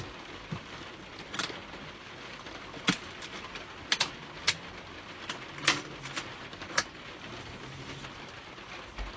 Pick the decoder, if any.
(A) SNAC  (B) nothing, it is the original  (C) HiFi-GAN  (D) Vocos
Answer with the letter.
B